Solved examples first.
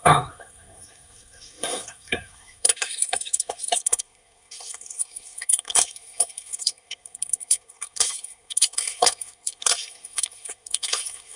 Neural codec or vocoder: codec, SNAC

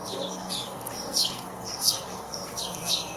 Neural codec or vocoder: codec, SNAC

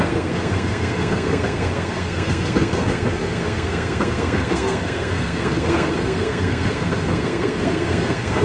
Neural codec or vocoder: codec, SNAC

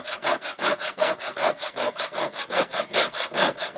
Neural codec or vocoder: codec, SNAC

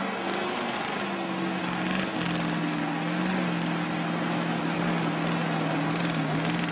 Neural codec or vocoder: none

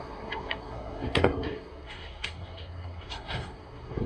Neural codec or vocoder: codec, SNAC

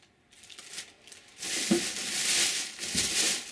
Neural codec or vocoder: none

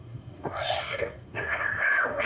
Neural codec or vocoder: codec, SNAC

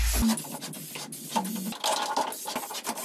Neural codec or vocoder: none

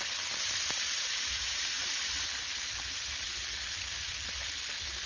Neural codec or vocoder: none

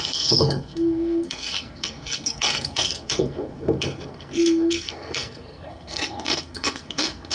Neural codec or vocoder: codec, SNAC